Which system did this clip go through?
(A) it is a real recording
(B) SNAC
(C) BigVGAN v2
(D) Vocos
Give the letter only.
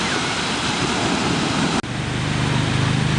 A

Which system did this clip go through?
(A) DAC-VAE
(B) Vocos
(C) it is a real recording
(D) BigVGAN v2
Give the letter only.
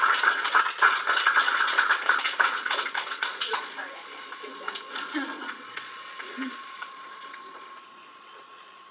B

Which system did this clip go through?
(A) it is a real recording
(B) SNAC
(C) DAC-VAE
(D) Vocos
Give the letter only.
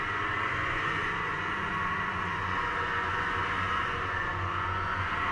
D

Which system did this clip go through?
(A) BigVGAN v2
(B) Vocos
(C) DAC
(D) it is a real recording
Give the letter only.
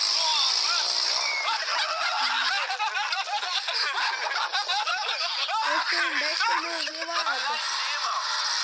D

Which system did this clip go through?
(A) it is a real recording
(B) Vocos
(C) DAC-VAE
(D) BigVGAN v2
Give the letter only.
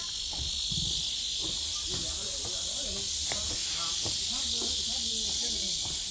A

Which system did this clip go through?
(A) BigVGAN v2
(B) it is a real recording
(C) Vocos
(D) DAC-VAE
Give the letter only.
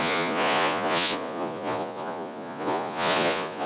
C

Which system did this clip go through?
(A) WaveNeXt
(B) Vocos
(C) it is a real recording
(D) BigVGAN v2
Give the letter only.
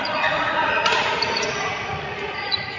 B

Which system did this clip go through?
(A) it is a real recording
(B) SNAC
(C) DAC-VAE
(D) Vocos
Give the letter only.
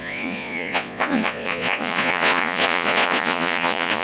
D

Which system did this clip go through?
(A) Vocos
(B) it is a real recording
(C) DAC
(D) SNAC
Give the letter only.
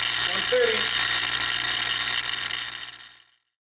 B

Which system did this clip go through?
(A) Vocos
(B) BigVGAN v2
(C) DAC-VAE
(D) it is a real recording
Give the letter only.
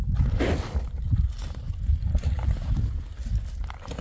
D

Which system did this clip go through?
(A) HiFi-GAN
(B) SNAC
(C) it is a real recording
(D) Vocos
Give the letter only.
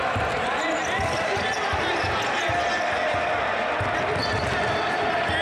C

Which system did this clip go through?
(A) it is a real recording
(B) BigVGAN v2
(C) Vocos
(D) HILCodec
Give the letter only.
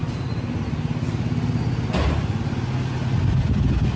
A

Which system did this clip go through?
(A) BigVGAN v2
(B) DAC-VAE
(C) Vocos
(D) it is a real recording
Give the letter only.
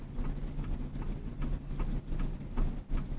D